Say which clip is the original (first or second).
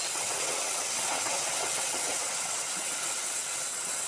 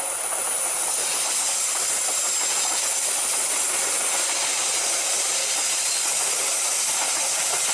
second